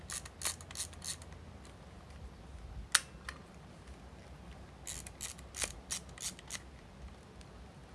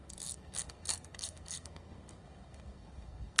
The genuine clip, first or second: first